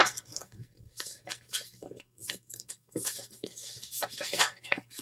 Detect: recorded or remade remade